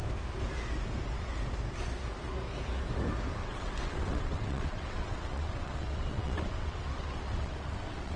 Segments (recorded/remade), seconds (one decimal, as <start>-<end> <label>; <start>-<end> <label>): 0.0-3.4 recorded; 3.4-8.2 remade